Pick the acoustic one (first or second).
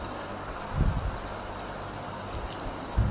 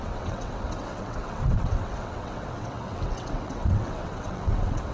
first